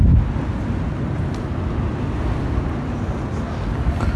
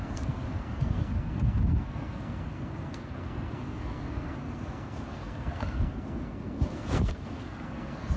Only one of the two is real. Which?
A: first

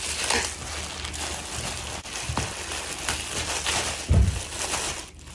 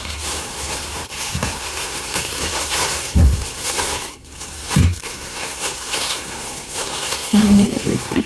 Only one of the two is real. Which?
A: first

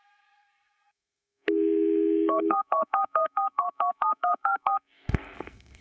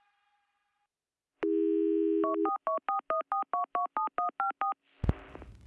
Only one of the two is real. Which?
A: second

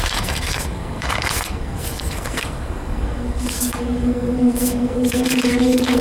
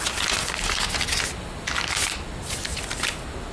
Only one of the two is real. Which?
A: second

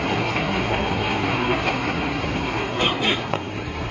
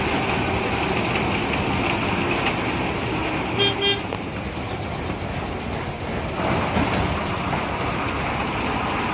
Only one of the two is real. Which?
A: second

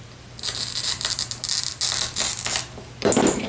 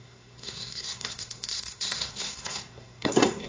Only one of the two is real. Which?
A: first